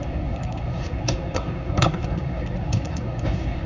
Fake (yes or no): yes